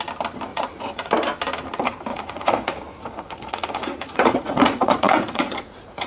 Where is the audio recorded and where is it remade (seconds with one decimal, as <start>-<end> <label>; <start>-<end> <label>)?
0.0-0.5 recorded; 0.5-1.1 remade; 1.1-2.1 recorded; 2.1-6.1 remade